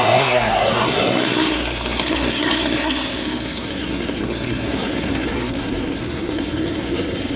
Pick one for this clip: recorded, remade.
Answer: remade